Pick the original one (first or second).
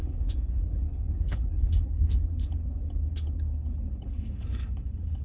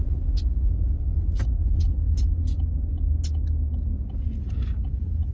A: second